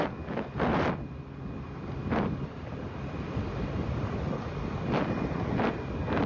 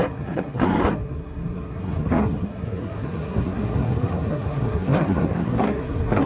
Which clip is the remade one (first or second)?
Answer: second